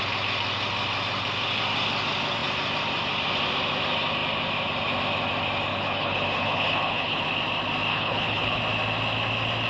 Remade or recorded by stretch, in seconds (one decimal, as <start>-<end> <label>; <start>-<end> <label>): 0.0-5.7 recorded; 5.7-7.2 remade; 7.2-7.9 recorded; 7.9-8.6 remade; 8.6-9.7 recorded